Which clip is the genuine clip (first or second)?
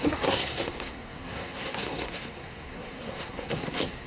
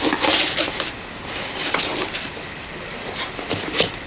second